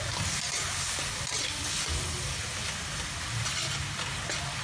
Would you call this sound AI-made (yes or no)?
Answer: no